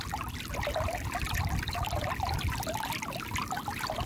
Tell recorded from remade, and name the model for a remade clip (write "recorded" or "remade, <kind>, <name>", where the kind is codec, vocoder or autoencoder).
recorded